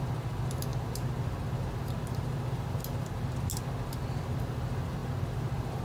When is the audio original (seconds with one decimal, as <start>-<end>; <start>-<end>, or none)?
0.0-5.8